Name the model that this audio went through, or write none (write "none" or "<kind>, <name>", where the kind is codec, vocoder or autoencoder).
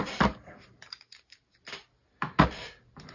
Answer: none